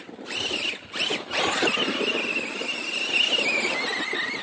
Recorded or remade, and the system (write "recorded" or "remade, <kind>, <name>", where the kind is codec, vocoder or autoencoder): recorded